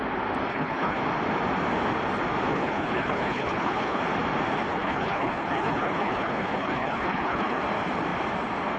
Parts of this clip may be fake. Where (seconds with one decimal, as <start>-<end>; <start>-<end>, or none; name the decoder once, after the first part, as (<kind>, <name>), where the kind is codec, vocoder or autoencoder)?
0.5-1.0 (codec, HILCodec); 2.5-4.0; 4.7-7.6